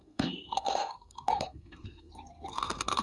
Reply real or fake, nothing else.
fake